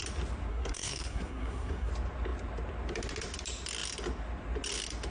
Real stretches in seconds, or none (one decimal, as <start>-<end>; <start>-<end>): 0.0-0.5; 1.9-5.1